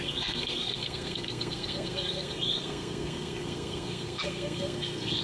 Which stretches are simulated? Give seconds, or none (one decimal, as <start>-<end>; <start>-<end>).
0.0-5.2